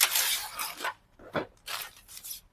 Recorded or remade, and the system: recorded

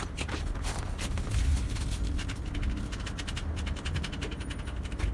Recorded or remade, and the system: recorded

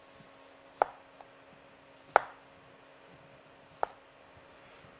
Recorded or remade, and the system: recorded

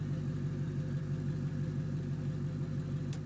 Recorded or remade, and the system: recorded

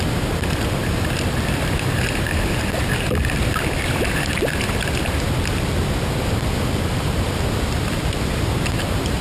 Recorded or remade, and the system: remade, vocoder, BigVGAN v2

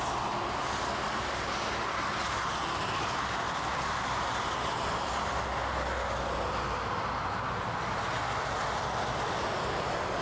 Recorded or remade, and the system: recorded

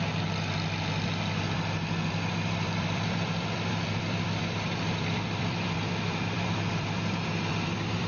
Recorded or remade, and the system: remade, vocoder, BigVGAN v2